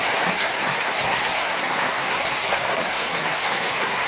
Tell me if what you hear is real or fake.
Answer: fake